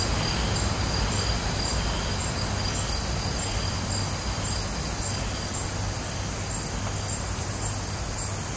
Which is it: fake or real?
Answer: real